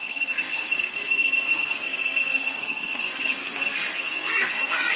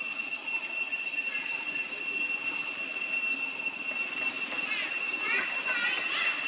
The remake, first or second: first